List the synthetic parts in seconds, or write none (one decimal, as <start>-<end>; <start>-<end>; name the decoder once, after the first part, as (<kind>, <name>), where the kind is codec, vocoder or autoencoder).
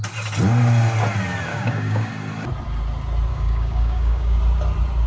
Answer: 1.5-2.1 (codec, DAC); 3.3-4.4